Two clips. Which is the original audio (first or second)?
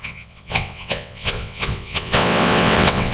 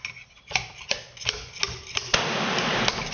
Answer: second